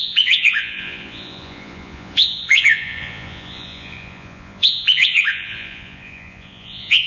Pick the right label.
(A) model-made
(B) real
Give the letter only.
A